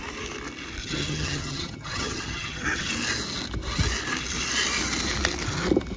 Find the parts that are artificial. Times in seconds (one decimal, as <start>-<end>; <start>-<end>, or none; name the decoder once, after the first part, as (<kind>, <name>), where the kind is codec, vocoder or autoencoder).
0.8-2.9 (vocoder, HiFi-GAN)